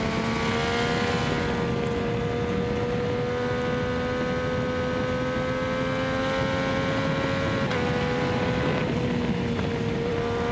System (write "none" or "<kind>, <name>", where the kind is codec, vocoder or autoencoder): none